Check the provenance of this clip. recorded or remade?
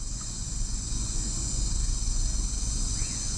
remade